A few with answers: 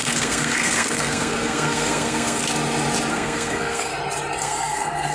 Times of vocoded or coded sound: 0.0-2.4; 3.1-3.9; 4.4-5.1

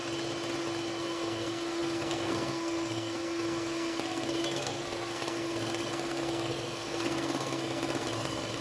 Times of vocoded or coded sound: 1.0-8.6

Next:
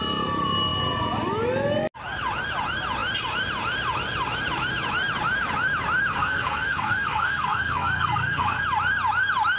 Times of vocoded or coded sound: 6.1-8.6

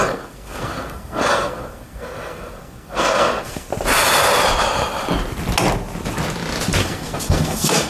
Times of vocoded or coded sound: 0.0-3.7; 6.8-7.9

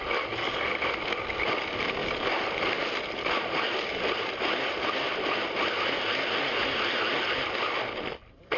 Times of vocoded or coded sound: none

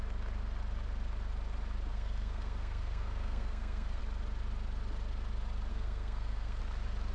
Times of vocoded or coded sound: 1.9-4.0; 5.7-6.6

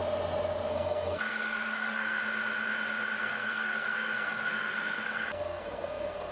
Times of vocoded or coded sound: 0.7-2.2; 3.2-6.3

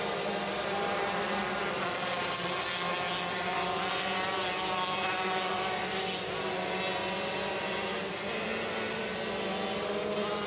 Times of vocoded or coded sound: none